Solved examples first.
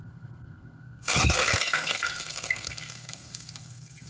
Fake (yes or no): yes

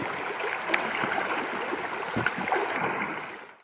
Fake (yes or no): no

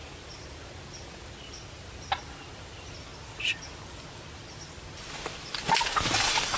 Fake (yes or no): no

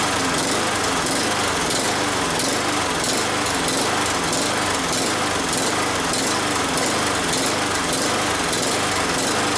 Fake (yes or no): no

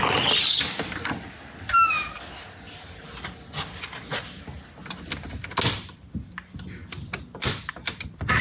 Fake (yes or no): no